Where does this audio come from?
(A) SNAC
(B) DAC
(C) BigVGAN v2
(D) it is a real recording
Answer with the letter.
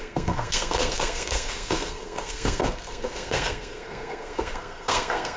A